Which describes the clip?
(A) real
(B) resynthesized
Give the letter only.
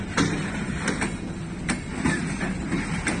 A